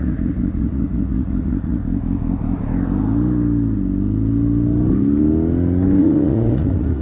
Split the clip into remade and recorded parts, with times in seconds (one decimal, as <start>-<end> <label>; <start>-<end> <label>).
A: 0.0-1.8 remade; 1.8-6.0 recorded; 6.0-7.0 remade